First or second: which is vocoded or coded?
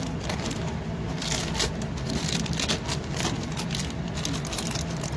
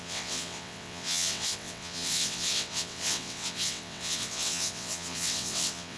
second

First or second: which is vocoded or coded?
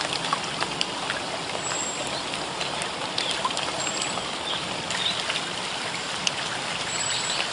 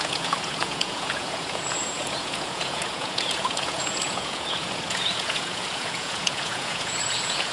second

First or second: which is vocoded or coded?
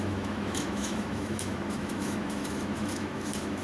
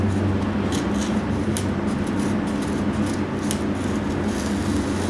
first